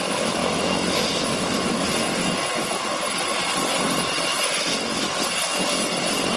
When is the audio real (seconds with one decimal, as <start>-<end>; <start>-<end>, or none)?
0.0-0.4; 1.9-4.3; 5.2-6.4

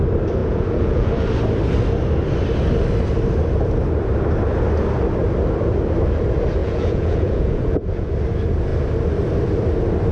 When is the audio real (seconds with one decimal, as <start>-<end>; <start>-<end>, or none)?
0.0-0.4; 1.1-6.6; 8.1-10.1

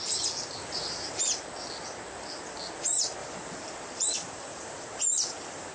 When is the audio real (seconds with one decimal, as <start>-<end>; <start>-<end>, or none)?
0.0-0.6; 1.2-3.2

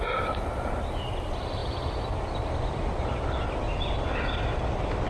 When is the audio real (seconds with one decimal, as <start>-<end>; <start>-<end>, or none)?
0.0-5.1

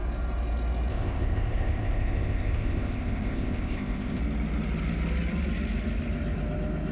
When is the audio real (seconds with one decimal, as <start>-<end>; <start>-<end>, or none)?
0.0-0.9; 4.2-6.9

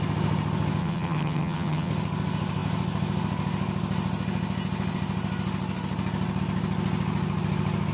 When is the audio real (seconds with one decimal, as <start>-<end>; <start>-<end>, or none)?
0.0-0.8; 1.9-7.9